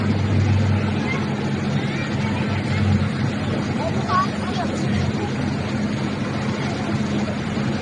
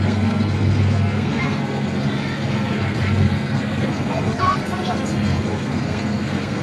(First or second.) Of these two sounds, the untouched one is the first